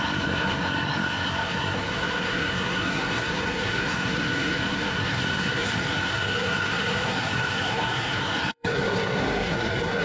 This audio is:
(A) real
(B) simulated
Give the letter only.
B